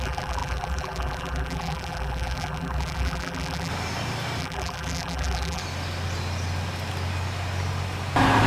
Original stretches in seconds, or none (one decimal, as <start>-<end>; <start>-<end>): 3.7-4.4; 5.6-8.5